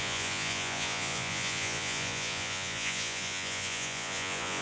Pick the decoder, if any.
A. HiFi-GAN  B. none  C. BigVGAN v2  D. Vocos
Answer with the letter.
D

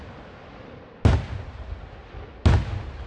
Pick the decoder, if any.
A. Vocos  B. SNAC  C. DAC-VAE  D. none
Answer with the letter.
D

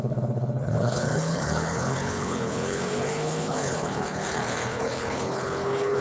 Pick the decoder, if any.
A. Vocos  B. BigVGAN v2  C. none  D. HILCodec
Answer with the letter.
D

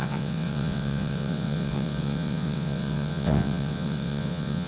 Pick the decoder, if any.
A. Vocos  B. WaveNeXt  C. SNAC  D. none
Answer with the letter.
B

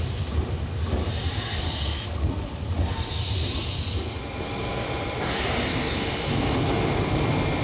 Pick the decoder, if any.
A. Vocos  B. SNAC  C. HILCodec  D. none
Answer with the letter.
D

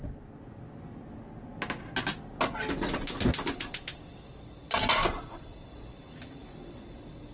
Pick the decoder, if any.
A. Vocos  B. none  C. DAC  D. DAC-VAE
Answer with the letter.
B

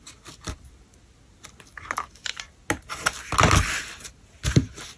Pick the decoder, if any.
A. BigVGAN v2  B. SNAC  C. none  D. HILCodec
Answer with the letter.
C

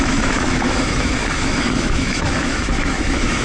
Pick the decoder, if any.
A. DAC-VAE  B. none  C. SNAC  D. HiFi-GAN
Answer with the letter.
A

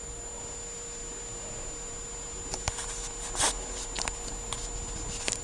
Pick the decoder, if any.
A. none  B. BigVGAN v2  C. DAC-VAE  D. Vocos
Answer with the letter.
A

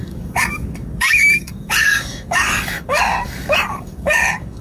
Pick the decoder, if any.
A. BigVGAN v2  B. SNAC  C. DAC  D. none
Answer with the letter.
C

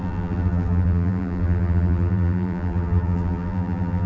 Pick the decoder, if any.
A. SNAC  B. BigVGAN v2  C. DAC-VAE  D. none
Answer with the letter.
B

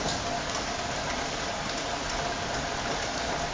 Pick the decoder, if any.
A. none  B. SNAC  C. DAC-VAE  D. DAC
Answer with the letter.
A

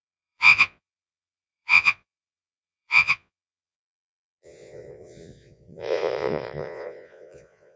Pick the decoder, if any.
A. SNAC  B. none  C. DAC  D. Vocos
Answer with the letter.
D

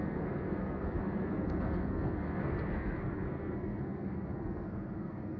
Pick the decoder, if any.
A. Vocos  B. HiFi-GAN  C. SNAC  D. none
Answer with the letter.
C